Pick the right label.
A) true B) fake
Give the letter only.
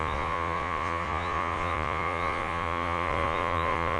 B